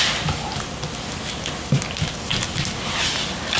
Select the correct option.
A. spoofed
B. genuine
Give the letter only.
B